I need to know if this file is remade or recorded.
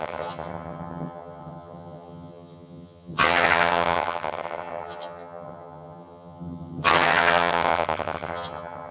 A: remade